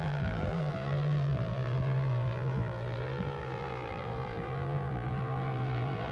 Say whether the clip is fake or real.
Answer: fake